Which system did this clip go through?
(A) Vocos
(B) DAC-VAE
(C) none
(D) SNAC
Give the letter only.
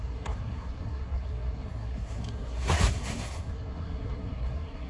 D